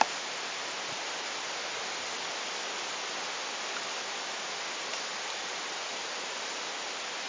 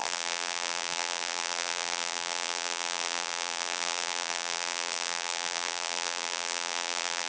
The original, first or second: first